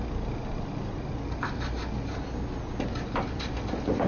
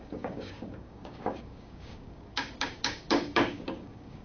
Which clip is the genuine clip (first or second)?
first